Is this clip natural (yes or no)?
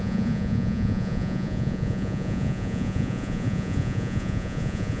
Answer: no